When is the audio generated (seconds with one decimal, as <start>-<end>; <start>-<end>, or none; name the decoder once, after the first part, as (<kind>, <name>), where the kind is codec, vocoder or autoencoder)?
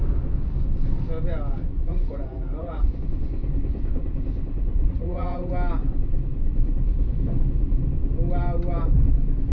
1.6-3.0 (vocoder, Vocos); 4.7-5.5